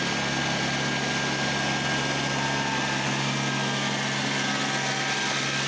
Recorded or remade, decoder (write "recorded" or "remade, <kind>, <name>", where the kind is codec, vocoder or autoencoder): recorded